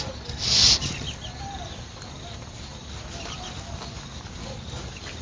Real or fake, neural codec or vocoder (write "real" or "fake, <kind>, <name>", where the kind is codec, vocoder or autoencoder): real